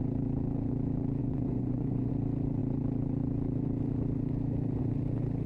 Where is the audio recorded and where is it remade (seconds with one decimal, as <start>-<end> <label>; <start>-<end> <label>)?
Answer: 0.0-1.2 recorded; 1.2-2.1 remade; 2.1-5.5 recorded